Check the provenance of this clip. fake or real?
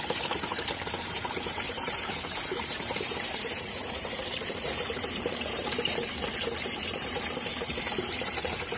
fake